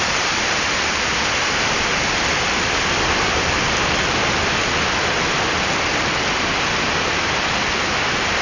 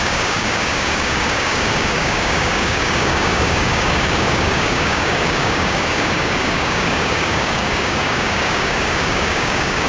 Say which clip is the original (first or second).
first